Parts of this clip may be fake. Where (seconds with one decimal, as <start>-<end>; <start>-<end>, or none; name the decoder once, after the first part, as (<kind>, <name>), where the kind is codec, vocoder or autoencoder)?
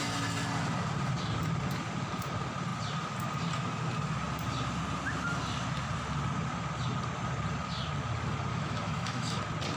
8.5-9.4 (autoencoder, DAC-VAE)